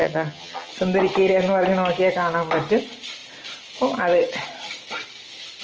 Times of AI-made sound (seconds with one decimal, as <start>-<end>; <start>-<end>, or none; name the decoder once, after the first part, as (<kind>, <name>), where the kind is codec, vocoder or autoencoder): 0.0-0.7 (vocoder, HiFi-GAN)